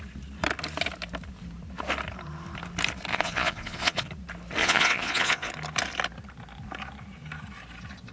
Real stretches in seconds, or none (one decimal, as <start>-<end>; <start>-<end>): 0.0-3.1; 4.1-4.6; 5.5-8.1